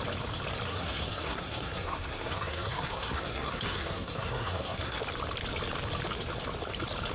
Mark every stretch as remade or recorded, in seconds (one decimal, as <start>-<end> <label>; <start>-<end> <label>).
0.0-0.7 recorded; 0.7-5.0 remade; 5.0-7.1 recorded